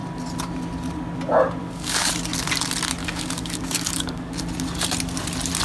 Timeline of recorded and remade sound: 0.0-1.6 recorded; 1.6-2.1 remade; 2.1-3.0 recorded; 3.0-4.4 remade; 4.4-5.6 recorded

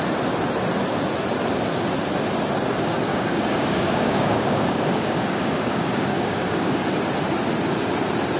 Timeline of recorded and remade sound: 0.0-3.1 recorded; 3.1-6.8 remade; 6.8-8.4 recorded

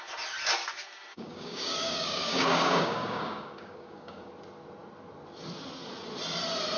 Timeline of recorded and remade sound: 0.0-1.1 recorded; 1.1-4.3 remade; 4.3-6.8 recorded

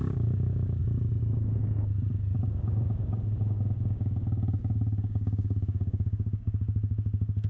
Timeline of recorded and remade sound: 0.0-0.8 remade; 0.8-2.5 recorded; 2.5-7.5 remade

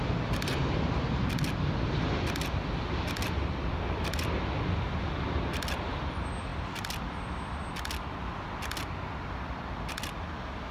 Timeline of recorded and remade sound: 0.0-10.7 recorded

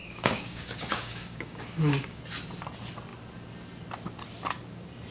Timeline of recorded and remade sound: 0.0-2.2 remade; 2.2-5.1 recorded